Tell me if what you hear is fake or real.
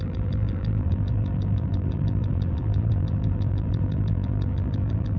fake